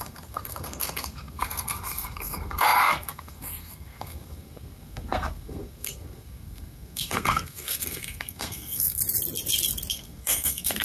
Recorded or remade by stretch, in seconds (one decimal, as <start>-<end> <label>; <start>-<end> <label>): 0.0-9.0 remade; 9.0-9.9 recorded; 9.9-10.8 remade